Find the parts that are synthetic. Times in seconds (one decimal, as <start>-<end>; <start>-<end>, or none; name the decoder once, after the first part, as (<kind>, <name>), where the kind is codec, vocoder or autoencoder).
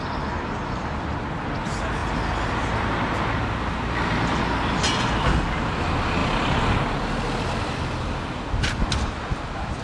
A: none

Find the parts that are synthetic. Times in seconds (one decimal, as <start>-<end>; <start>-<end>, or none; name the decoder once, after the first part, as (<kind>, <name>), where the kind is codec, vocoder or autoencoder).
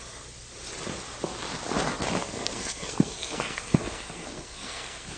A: 2.2-5.2 (codec, SNAC)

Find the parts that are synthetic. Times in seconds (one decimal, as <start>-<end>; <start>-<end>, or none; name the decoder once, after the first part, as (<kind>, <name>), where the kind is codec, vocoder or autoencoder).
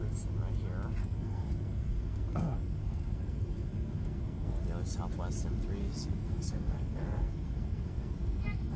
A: 1.0-4.6 (codec, SNAC); 5.8-8.8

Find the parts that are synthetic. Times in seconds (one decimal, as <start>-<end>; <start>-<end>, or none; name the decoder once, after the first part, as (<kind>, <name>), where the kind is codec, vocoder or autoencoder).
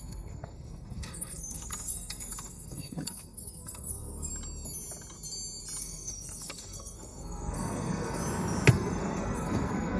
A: 0.0-4.3 (codec, SNAC); 5.8-8.2; 8.7-10.0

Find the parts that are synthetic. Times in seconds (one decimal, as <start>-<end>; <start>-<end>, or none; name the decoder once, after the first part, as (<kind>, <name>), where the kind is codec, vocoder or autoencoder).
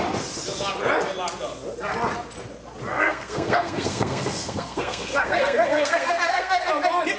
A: 2.9-6.7 (codec, SNAC)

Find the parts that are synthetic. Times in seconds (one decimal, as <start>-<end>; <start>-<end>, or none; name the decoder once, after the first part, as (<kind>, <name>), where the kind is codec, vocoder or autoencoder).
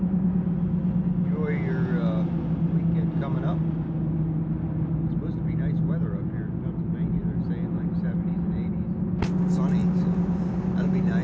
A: none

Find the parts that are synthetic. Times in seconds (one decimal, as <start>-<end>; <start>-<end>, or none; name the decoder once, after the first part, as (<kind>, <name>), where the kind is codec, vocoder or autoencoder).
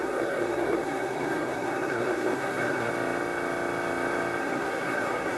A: 0.0-2.9 (codec, SNAC); 4.4-5.4